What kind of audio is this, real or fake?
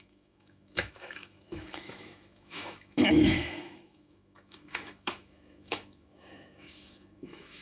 fake